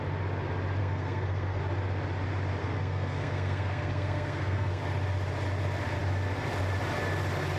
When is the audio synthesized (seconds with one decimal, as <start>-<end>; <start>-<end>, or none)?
0.8-1.6; 2.6-4.8